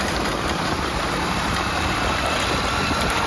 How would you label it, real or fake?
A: real